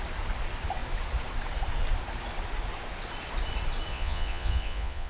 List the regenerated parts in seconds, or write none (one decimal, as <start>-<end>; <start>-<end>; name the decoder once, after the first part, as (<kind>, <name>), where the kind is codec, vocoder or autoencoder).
3.9-5.1 (vocoder, Vocos)